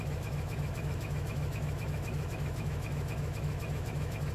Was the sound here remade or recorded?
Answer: remade